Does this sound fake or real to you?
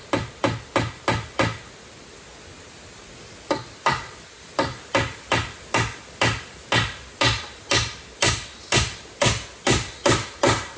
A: real